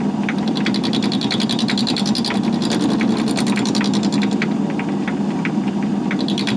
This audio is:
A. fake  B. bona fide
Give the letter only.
B